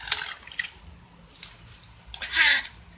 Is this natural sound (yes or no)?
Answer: yes